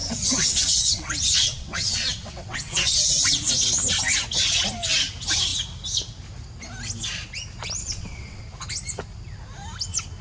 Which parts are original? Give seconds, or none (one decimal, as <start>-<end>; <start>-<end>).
3.5-7.8; 8.4-10.2